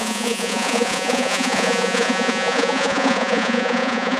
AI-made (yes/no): yes